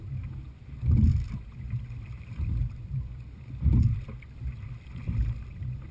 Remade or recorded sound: recorded